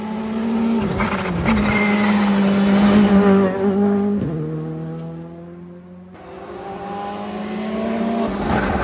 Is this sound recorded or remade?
recorded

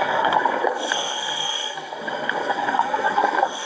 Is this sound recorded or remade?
remade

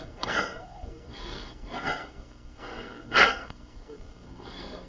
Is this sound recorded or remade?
remade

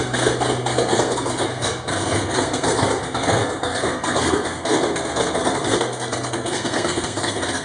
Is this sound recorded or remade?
remade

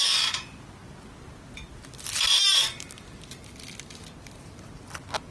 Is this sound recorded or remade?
recorded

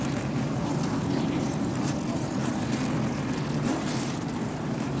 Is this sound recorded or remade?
remade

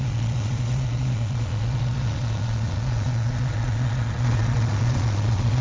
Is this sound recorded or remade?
remade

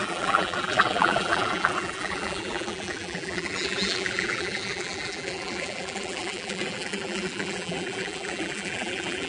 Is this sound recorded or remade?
remade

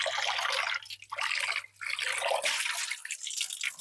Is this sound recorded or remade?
recorded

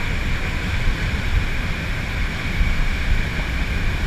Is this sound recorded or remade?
remade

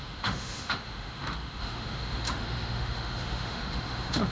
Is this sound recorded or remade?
remade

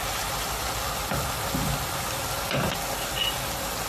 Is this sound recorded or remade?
recorded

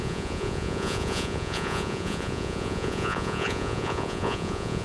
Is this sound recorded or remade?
remade